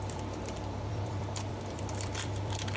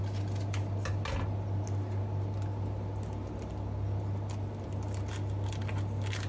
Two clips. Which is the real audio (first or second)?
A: second